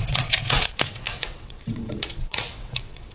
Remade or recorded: remade